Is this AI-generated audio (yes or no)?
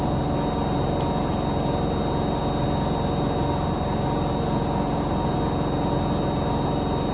no